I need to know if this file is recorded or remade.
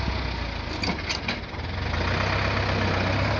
recorded